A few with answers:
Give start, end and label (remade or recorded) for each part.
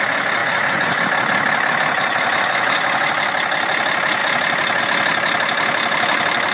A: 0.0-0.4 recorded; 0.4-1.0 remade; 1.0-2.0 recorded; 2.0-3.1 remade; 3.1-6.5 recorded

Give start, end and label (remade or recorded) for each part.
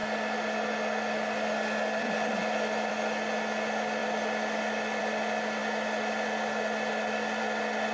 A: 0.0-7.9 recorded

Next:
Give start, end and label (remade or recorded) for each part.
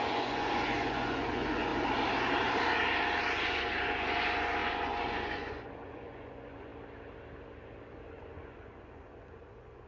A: 0.0-1.7 remade; 1.7-3.2 recorded; 3.2-6.7 remade; 6.7-8.1 recorded; 8.1-9.9 remade